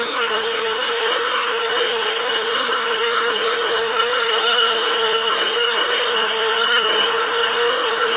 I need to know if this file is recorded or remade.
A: remade